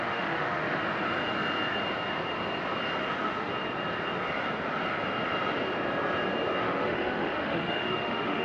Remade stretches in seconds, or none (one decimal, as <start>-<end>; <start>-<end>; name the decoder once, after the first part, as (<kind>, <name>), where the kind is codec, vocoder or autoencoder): 0.0-0.8 (autoencoder, DAC-VAE); 3.0-3.5; 6.6-8.4